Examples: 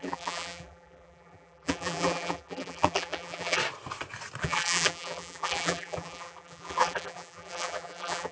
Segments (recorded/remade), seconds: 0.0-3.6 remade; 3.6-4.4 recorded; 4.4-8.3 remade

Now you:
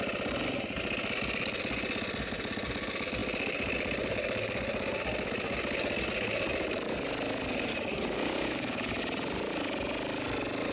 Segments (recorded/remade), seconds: 0.0-7.7 recorded; 7.7-9.0 remade; 9.0-10.7 recorded

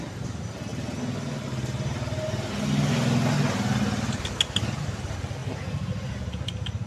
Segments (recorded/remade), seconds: 0.0-6.9 recorded

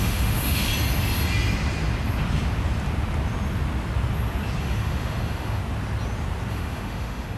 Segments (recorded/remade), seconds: 0.0-0.7 remade; 0.7-4.6 recorded; 4.6-5.6 remade; 5.6-6.5 recorded; 6.5-7.4 remade

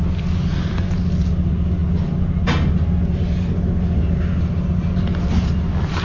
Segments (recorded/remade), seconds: 0.0-6.0 recorded

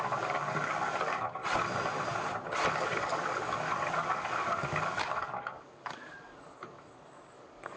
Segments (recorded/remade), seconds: 0.0-1.4 remade; 1.4-2.7 recorded; 2.7-7.8 remade

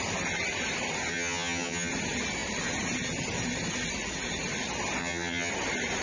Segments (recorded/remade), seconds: 0.0-1.1 recorded; 1.1-1.9 remade; 1.9-5.0 recorded; 5.0-5.5 remade; 5.5-6.0 recorded